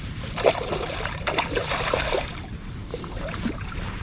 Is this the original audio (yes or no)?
no